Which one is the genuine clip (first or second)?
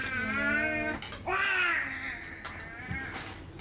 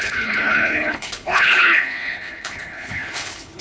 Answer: first